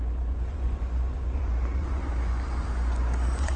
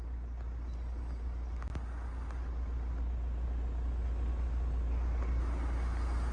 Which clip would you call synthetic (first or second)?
first